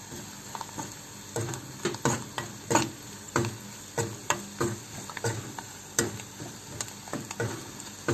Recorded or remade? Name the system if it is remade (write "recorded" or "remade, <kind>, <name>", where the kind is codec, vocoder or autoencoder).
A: recorded